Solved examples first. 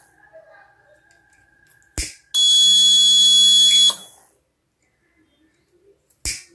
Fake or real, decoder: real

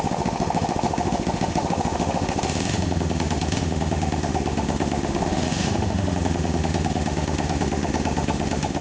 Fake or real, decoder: fake, autoencoder, DAC-VAE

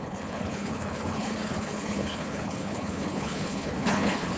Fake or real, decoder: fake, codec, HILCodec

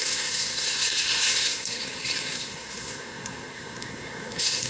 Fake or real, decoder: fake, codec, SNAC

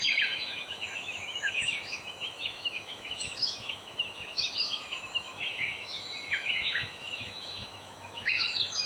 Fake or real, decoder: fake, autoencoder, DAC-VAE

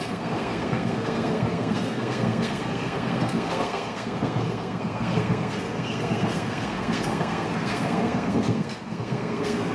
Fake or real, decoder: fake, codec, SNAC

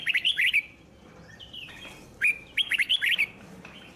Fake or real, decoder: real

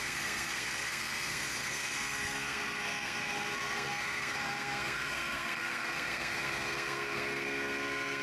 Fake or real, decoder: fake, codec, SNAC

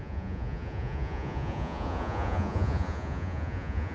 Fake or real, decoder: fake, vocoder, Vocos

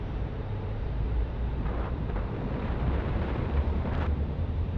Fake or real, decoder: fake, vocoder, BigVGAN v2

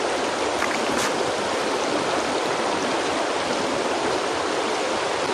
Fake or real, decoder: real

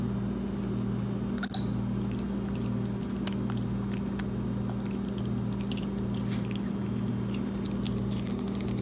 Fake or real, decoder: real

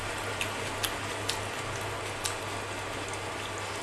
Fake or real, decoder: real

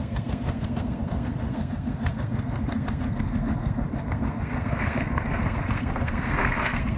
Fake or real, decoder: fake, codec, SNAC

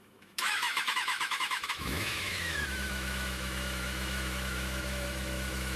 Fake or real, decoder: fake, autoencoder, DAC-VAE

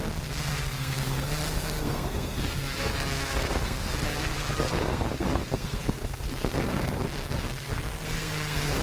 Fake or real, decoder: fake, codec, SNAC